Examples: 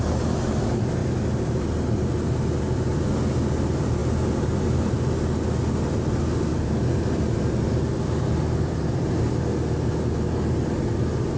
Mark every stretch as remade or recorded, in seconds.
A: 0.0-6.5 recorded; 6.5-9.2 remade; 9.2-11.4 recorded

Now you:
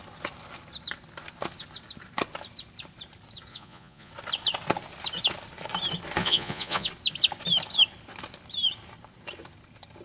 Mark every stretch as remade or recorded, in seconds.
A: 0.0-3.5 recorded; 3.5-4.1 remade; 4.1-6.2 recorded; 6.2-6.9 remade; 6.9-10.0 recorded

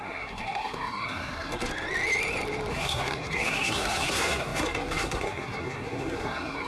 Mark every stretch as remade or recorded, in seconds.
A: 0.0-1.7 remade; 1.7-2.7 recorded; 2.7-6.7 remade

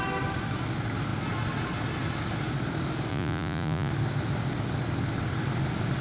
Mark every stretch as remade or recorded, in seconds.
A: 0.0-3.1 recorded; 3.1-3.9 remade; 3.9-6.0 recorded